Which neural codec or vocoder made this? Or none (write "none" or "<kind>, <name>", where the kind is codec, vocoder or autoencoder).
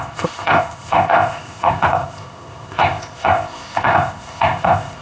codec, ZipCodec